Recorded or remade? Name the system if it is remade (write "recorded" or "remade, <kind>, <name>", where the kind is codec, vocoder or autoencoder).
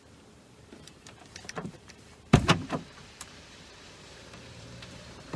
remade, vocoder, BigVGAN v2